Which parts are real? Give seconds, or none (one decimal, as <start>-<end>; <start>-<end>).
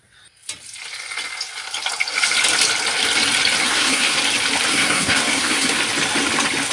0.0-3.6; 4.2-4.7; 5.8-6.7